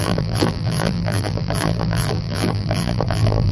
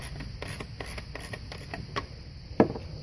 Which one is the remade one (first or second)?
first